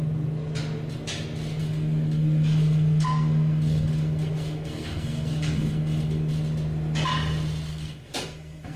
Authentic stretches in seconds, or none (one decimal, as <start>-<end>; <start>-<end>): 0.0-1.6; 6.3-7.7